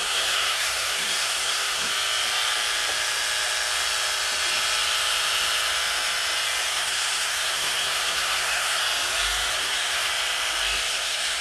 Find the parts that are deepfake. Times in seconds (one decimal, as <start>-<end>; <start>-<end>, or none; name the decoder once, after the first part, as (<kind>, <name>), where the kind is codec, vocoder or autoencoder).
0.0-1.9 (codec, SNAC); 6.7-8.8; 9.5-10.1; 10.9-11.4